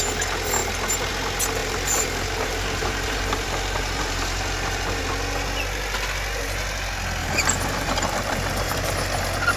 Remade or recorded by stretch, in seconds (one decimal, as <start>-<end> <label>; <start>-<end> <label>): 0.0-1.6 recorded; 1.6-5.0 remade; 5.0-7.2 recorded; 7.2-9.2 remade; 9.2-9.6 recorded